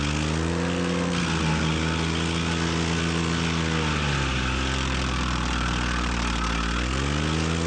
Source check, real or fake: real